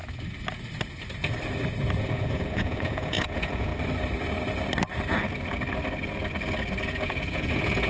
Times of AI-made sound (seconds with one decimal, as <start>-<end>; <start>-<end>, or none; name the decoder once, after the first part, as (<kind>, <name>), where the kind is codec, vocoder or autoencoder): 2.0-3.7 (vocoder, Vocos); 6.9-7.9

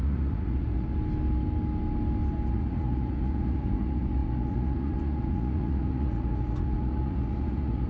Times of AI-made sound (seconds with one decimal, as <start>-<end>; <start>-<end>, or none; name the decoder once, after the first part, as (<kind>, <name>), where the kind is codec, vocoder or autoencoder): 0.0-0.9 (vocoder, Vocos); 2.5-7.9